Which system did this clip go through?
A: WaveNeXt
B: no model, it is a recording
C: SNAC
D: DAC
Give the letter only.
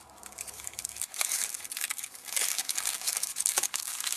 D